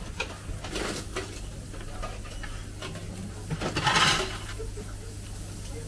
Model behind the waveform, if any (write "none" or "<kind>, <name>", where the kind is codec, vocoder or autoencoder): none